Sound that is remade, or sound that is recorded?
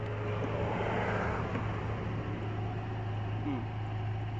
recorded